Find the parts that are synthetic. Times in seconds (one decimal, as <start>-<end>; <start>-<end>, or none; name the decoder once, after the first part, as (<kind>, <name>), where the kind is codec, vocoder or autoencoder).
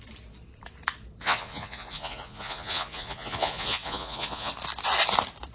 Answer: 1.2-4.5 (vocoder, Vocos)